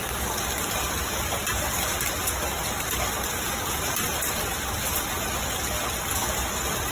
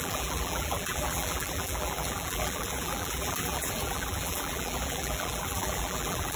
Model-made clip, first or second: second